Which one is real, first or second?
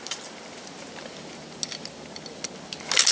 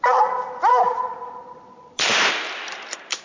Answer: first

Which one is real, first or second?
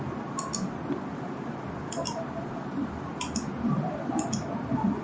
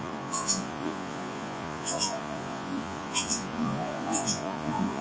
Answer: first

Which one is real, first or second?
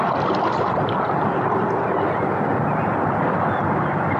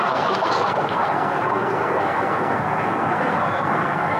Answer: first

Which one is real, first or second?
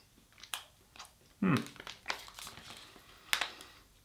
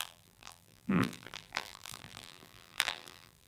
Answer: first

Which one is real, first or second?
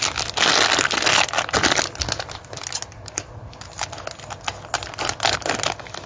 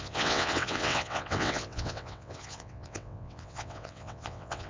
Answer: first